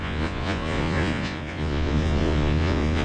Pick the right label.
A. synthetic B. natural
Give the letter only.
A